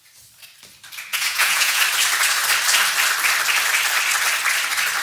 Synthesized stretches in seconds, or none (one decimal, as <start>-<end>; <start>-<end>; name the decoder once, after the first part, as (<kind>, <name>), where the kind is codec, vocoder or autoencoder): 1.1-1.8 (vocoder, Vocos)